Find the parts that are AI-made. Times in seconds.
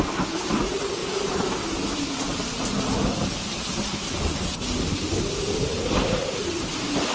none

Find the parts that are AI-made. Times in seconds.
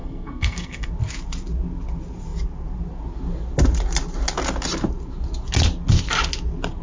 0.0-0.9 (codec, SNAC)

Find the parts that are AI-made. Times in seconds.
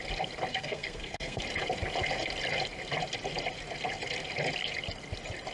0.5-1.4 (codec, SNAC)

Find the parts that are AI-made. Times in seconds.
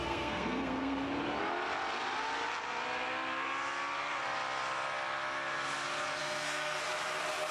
0.0-1.1 (codec, SNAC); 6.2-6.8